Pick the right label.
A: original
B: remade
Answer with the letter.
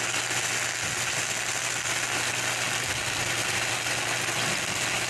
A